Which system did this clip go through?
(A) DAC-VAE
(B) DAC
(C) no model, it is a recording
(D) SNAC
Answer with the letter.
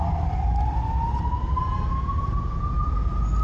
C